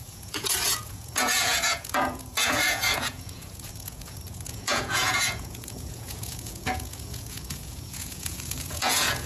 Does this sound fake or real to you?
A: fake